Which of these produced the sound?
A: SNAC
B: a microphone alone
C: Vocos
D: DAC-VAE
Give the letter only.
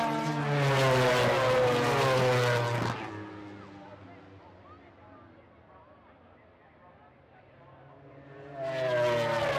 B